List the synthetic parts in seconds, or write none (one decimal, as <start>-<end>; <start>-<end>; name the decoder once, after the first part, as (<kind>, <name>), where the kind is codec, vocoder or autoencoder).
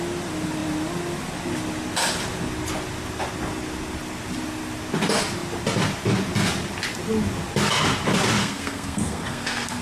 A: 8.4-9.8 (codec, SNAC)